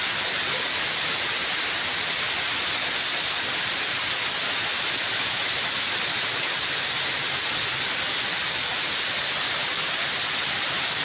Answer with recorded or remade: recorded